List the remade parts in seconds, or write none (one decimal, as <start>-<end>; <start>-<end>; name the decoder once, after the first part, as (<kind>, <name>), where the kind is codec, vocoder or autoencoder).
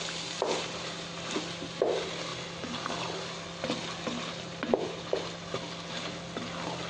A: none